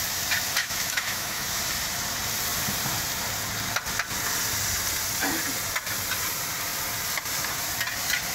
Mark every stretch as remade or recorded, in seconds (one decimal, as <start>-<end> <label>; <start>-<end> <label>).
0.0-0.6 recorded; 0.6-1.6 remade; 1.6-8.3 recorded